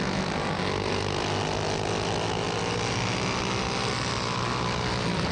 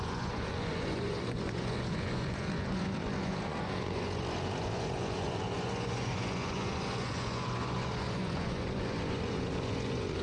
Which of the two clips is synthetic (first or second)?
second